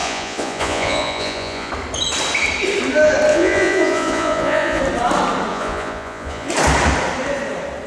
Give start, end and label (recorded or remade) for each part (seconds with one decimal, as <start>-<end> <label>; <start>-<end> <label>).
0.0-1.7 remade; 1.7-3.3 recorded; 3.3-4.8 remade; 4.8-5.5 recorded; 5.5-6.5 remade; 6.5-7.9 recorded